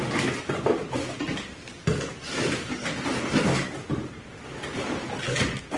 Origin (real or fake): real